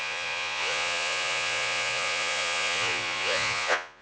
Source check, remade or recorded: remade